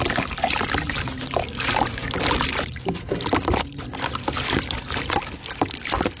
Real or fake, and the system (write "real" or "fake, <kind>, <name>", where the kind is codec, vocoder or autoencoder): real